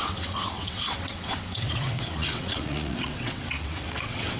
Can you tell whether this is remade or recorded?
remade